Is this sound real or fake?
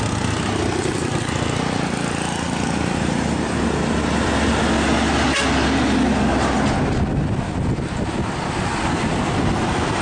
real